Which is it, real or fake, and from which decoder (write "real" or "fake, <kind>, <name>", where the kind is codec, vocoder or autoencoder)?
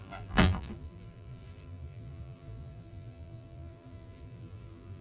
fake, vocoder, BigVGAN v2